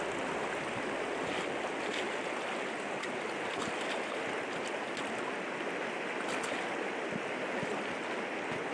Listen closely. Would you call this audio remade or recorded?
recorded